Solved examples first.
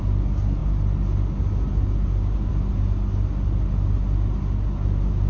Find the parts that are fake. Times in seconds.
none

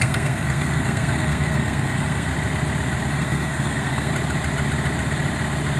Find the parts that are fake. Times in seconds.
0.0-2.3 (codec, SNAC); 3.1-4.1

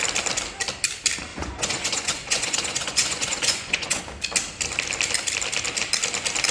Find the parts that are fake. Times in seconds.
1.3-4.0 (vocoder, Vocos)

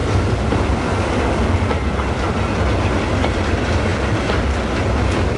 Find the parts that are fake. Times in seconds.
none

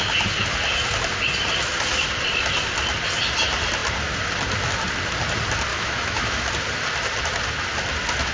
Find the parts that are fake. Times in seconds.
5.7-6.5 (autoencoder, DAC-VAE)

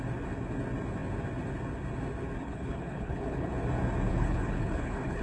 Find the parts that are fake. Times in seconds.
2.4-3.5 (codec, HILCodec); 4.1-5.2

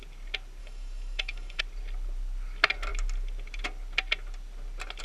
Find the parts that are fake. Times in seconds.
0.6-1.6 (autoencoder, DAC-VAE)